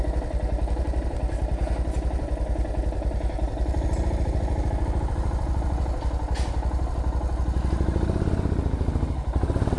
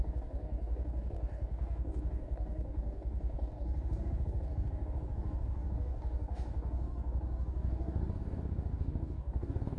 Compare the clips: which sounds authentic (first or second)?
first